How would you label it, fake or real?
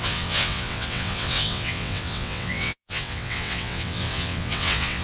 fake